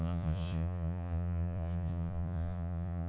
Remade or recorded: remade